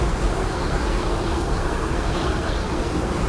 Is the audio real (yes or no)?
no